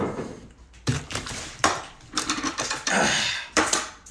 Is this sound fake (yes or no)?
yes